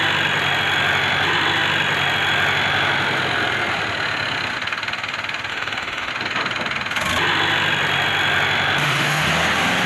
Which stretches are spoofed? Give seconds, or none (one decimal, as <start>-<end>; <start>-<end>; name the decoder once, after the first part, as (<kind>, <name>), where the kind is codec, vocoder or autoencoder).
5.5-6.1 (autoencoder, DAC-VAE); 8.8-9.3